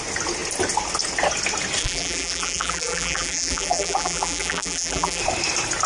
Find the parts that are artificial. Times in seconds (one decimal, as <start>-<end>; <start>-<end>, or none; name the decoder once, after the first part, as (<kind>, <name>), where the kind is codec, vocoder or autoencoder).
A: 1.8-5.2 (vocoder, BigVGAN v2)